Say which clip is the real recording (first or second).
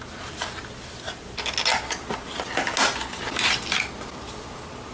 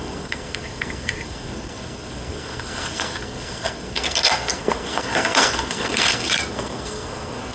first